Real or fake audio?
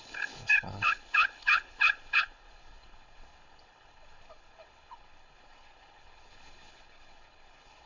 fake